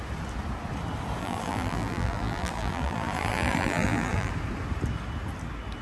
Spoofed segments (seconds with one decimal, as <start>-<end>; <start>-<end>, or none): 1.2-4.3